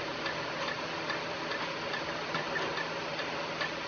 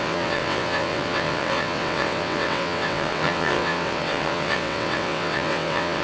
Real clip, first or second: first